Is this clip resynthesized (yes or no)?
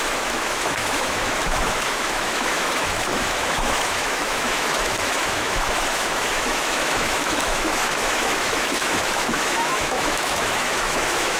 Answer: yes